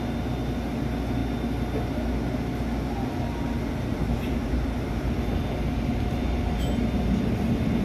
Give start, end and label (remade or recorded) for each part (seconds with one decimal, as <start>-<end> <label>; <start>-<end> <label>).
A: 0.0-7.8 recorded